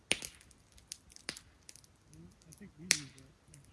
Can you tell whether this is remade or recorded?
recorded